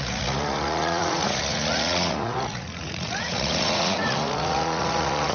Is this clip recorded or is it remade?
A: remade